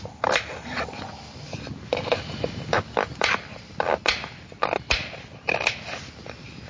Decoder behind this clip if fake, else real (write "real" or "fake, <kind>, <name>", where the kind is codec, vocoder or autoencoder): real